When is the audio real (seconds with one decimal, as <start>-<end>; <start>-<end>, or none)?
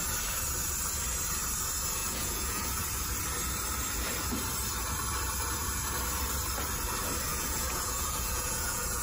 0.0-2.0; 2.8-7.3